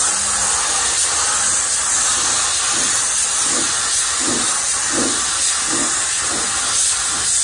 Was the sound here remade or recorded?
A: recorded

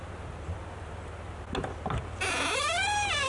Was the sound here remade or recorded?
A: recorded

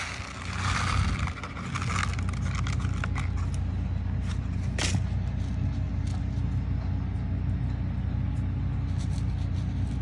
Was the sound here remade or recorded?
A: recorded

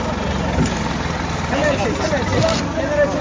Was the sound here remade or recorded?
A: recorded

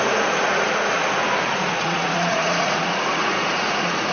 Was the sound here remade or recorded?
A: remade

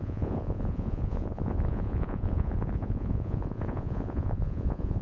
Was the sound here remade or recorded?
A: remade